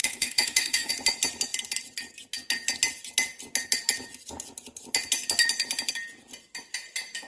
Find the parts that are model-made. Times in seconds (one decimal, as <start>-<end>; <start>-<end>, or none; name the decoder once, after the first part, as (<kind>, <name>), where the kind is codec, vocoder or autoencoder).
0.0-0.9 (autoencoder, DAC-VAE)